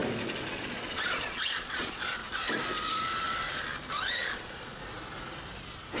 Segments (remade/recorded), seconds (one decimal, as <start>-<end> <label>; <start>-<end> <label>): 0.0-0.5 recorded; 0.5-2.2 remade; 2.2-4.2 recorded; 4.2-4.8 remade; 4.8-6.0 recorded